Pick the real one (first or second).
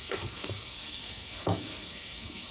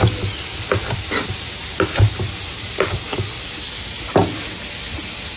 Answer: second